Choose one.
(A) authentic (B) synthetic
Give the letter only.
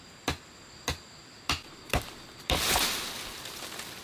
A